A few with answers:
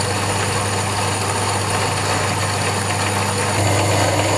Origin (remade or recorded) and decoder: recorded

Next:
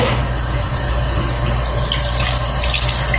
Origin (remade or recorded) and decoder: recorded